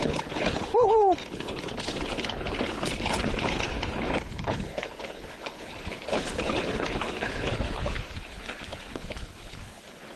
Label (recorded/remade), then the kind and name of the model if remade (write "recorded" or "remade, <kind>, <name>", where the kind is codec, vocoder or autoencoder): remade, codec, HILCodec